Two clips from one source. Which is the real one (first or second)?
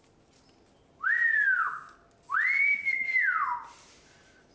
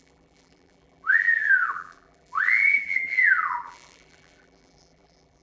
first